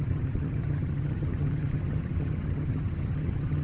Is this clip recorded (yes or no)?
no